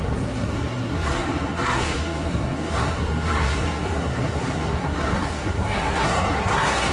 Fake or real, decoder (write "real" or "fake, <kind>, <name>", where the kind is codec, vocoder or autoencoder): fake, codec, SNAC